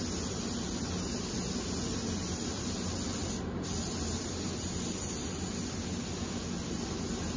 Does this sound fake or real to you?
real